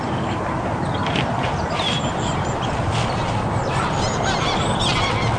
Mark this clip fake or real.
real